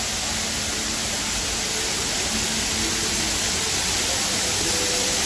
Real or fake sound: real